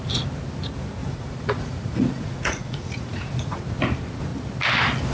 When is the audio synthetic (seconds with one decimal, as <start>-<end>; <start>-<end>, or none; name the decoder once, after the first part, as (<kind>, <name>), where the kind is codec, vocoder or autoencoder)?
1.0-3.6 (vocoder, Vocos)